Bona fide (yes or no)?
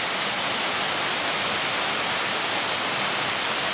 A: yes